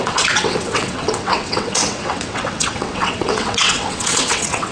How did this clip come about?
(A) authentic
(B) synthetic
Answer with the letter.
B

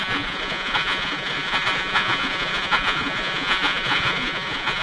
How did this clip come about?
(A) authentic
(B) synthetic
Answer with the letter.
B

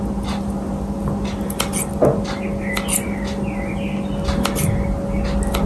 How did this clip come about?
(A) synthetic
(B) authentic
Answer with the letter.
B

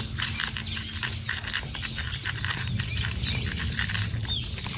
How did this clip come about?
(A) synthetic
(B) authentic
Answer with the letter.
B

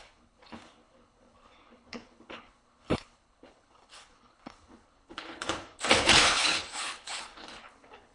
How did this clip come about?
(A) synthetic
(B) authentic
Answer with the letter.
A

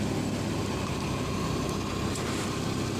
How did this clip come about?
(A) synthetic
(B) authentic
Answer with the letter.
B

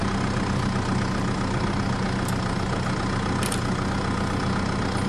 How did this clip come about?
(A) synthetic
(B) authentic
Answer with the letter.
B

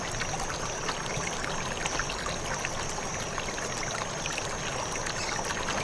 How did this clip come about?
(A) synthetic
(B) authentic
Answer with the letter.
B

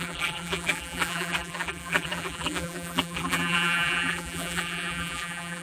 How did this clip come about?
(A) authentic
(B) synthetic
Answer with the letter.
B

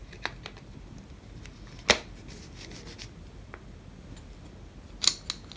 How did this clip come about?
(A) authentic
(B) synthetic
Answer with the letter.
A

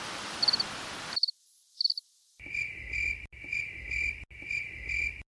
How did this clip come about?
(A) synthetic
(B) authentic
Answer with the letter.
B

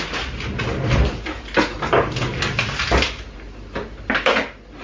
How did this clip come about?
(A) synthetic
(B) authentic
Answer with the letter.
B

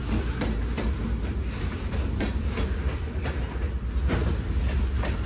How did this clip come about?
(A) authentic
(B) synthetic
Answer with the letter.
A